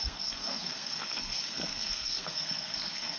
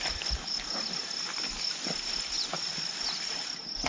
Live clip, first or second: second